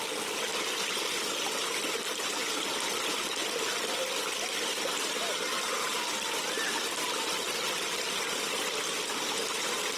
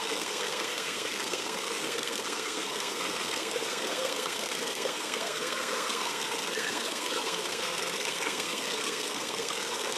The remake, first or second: second